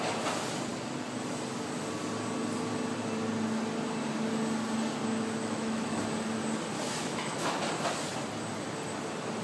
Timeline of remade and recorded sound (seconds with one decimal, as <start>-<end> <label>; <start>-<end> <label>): 0.0-5.4 recorded; 5.4-6.0 remade; 6.0-7.0 recorded; 7.0-7.6 remade; 7.6-9.4 recorded